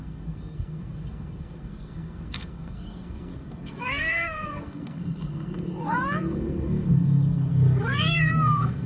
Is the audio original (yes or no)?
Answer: no